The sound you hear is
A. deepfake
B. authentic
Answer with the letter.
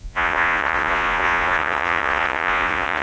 A